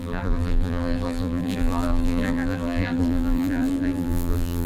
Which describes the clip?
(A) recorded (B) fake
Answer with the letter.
B